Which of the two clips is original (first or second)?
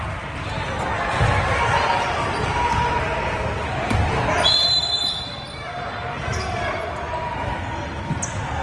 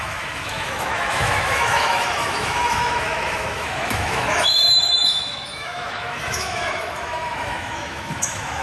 first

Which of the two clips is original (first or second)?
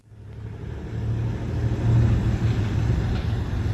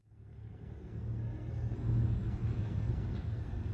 first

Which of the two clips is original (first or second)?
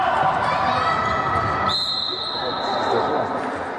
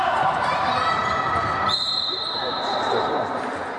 first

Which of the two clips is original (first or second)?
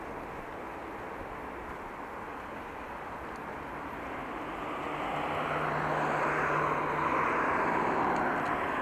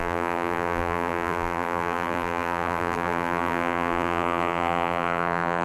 first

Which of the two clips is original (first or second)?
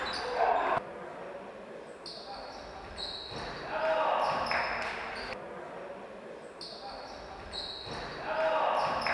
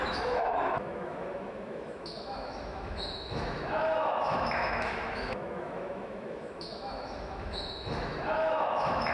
first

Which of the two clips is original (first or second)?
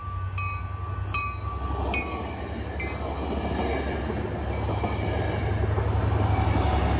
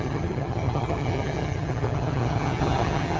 first